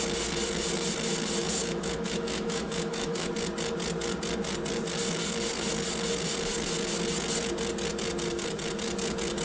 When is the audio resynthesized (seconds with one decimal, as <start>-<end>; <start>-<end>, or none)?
1.4-3.3

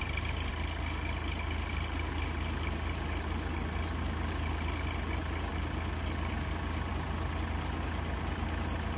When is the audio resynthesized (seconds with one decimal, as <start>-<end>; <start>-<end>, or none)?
none

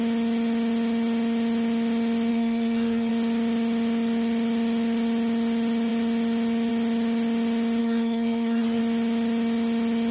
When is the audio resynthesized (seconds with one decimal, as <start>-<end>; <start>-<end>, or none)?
2.3-3.1; 7.8-8.8

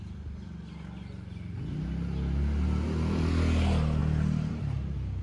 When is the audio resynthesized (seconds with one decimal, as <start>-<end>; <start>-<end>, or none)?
none

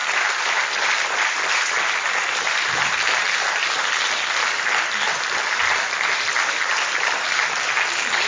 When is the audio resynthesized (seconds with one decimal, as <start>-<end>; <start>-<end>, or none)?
2.2-3.2; 6.7-8.3